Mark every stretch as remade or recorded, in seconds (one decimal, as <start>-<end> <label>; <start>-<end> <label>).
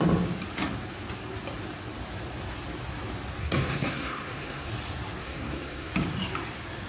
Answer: 0.0-3.4 recorded; 3.4-4.7 remade; 4.7-5.2 recorded; 5.2-5.9 remade; 5.9-6.9 recorded